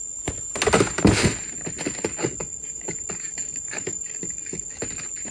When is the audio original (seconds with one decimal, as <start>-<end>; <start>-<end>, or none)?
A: 0.0-2.2; 4.8-5.3